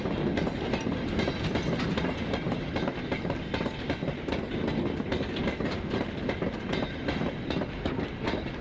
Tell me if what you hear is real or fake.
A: real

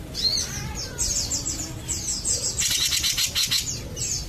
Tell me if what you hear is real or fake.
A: real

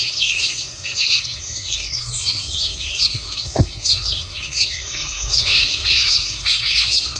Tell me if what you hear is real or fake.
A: fake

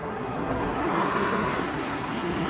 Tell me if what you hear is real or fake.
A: fake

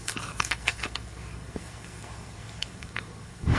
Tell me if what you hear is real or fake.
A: fake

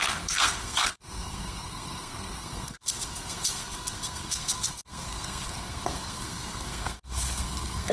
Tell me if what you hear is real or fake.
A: fake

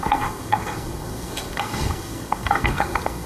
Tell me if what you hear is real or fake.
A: fake